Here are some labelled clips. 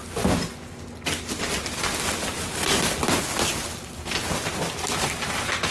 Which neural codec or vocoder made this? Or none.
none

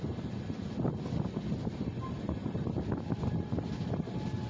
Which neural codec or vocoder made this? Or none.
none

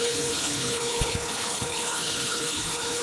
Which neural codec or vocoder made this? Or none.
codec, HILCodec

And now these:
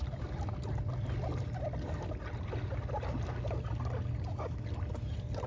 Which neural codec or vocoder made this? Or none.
none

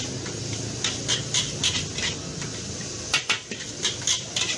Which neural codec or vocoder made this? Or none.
none